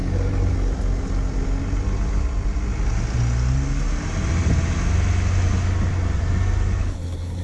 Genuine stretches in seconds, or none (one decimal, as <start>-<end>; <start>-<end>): 0.0-6.8